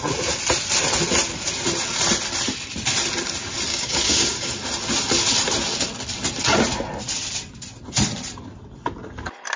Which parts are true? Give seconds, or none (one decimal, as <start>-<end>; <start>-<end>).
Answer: 0.0-3.7; 4.5-9.6